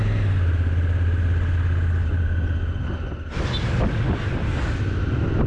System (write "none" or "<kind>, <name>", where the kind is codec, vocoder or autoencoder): none